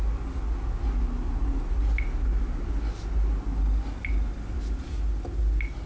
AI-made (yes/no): no